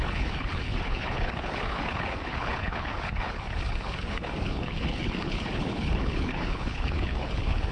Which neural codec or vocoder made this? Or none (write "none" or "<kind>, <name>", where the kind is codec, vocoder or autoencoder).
codec, HILCodec